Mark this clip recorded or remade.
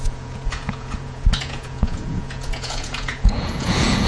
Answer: remade